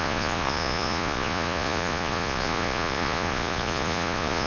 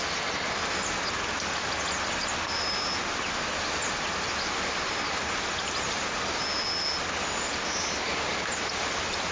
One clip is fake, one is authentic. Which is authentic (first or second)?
second